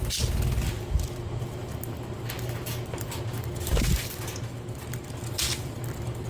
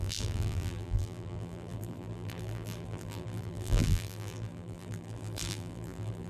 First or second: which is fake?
second